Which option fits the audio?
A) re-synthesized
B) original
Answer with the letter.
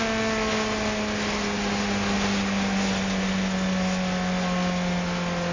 B